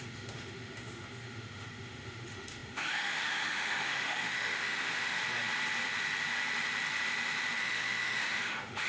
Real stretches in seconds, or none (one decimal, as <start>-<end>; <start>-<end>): 5.2-7.6